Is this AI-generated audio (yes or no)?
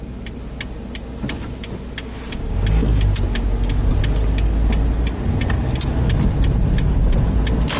no